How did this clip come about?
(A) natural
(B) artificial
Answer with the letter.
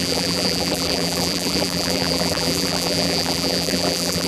B